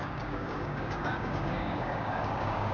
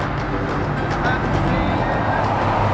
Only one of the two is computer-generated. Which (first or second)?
first